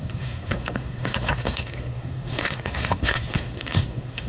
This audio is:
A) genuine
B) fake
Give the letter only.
B